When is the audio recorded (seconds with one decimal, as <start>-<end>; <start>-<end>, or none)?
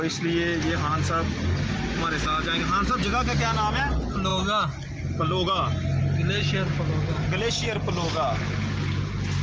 0.0-9.4